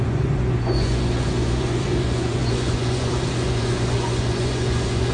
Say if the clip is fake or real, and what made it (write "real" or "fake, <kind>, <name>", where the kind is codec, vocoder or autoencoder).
fake, vocoder, Vocos